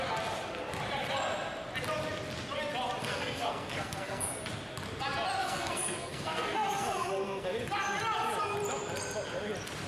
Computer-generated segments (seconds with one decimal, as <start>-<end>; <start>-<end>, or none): 3.0-4.4; 5.4-7.7